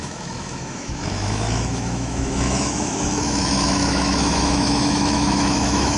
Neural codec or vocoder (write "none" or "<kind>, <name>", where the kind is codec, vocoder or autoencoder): autoencoder, DAC-VAE